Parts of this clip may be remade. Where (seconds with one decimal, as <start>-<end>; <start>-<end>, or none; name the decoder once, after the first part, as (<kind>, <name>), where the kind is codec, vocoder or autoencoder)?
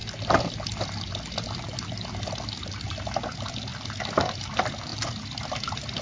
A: none